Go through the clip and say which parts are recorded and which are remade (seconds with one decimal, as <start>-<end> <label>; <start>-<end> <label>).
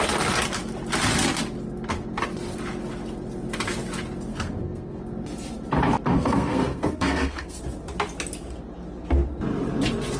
0.0-4.3 recorded; 4.3-5.0 remade; 5.0-6.1 recorded; 6.1-7.6 remade; 7.6-10.2 recorded